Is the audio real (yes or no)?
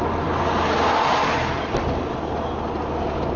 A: yes